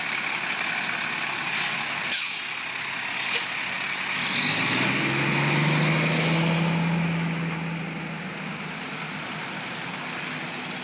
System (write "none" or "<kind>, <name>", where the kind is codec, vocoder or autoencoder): none